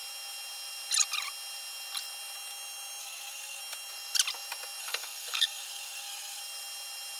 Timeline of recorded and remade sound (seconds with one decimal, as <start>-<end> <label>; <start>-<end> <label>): 0.0-3.0 recorded; 3.0-3.6 remade; 3.6-4.8 recorded; 4.8-6.4 remade; 6.4-7.2 recorded